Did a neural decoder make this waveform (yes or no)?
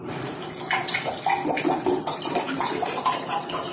yes